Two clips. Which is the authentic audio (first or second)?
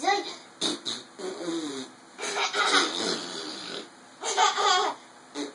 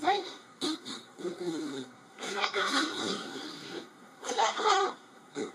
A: first